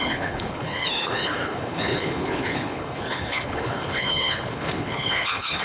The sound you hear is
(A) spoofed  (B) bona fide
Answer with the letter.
A